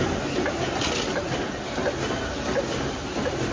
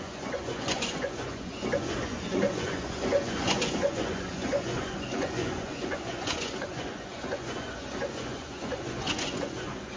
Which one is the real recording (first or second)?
first